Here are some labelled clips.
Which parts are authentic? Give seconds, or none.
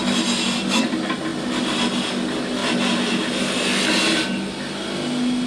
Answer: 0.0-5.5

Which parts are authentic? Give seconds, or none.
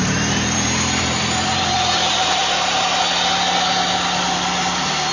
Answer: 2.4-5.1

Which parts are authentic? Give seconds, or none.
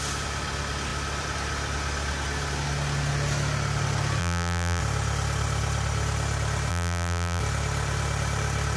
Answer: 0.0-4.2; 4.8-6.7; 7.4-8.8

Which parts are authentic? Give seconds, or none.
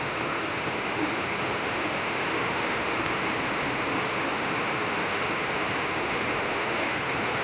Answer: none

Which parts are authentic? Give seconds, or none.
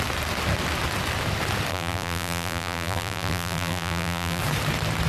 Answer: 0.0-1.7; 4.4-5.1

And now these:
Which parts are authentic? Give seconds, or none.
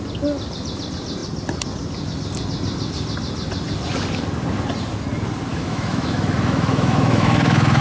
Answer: 0.0-5.5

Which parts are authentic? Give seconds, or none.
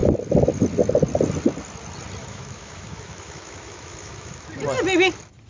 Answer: 0.0-2.2; 4.5-5.5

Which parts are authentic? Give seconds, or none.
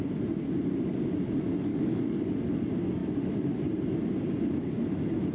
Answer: 0.0-1.7; 2.3-5.3